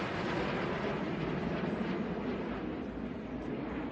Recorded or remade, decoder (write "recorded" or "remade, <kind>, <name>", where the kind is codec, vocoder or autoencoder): recorded